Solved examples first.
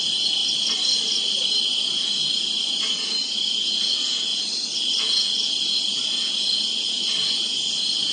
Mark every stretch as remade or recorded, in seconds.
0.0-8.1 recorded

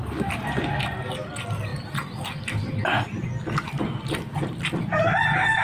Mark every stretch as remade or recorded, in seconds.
0.0-5.6 recorded

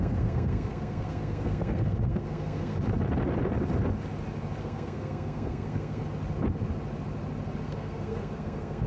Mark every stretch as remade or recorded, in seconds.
0.0-2.7 remade; 2.7-4.6 recorded; 4.6-6.0 remade; 6.0-7.6 recorded; 7.6-8.9 remade

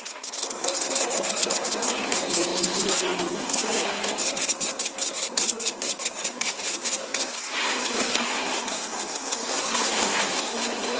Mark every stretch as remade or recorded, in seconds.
0.0-11.0 remade

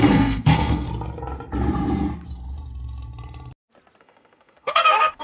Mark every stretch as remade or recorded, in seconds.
0.0-0.9 remade; 0.9-4.0 recorded; 4.0-5.2 remade